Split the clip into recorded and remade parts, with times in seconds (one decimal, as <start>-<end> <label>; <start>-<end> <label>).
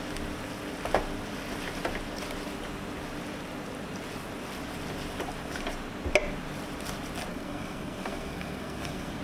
0.0-7.3 recorded; 7.3-9.2 remade